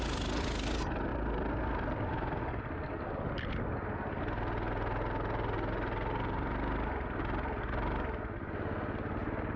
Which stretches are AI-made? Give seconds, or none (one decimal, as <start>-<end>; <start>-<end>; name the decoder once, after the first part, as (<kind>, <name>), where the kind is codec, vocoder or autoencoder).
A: none